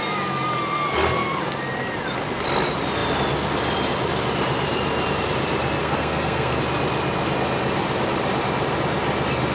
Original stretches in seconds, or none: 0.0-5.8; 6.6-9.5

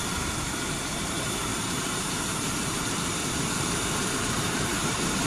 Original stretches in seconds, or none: none

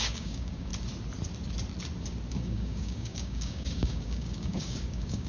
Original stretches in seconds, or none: 0.7-2.3

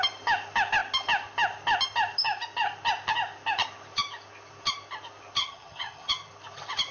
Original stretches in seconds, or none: 0.0-5.4; 6.1-6.9

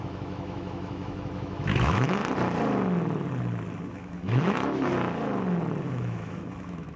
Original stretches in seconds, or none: 2.2-3.8; 4.9-5.8

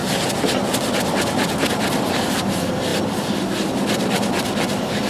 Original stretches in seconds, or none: 0.0-5.1